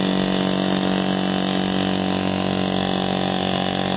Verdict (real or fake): real